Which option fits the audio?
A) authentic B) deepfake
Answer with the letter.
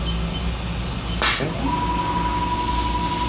A